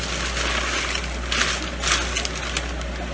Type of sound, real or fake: real